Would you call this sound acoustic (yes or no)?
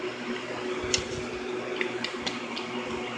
yes